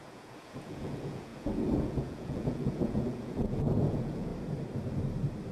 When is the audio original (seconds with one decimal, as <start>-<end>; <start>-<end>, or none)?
4.3-5.5